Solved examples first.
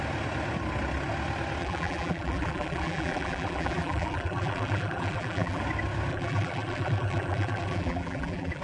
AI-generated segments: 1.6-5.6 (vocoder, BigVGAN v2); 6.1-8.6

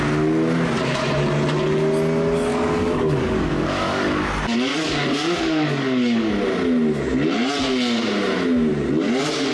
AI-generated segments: 2.5-4.3 (codec, DAC); 4.7-6.3

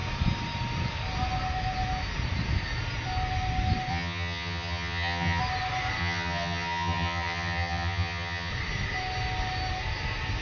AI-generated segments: 3.9-5.4 (vocoder, HiFi-GAN); 6.0-8.5